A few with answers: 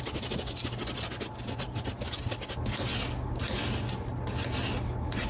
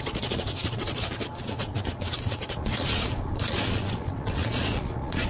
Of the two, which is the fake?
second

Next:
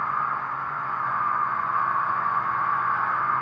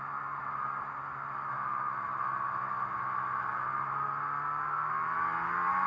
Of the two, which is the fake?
first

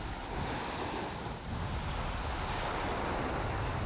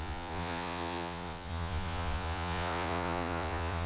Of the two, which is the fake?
second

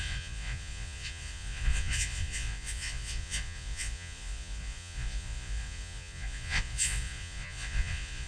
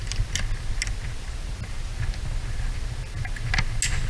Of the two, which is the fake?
first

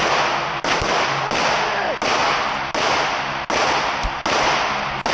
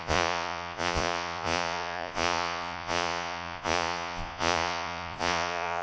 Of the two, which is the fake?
second